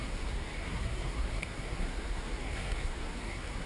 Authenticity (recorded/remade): remade